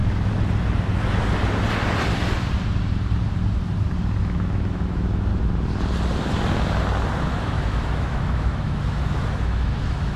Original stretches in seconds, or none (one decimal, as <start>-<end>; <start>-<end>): 0.0-4.2; 5.3-7.3